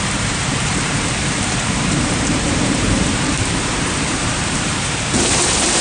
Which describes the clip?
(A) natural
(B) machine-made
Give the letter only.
B